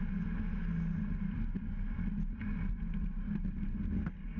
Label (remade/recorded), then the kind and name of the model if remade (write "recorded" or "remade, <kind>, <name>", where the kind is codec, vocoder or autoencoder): recorded